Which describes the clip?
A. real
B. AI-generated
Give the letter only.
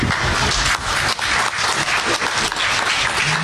A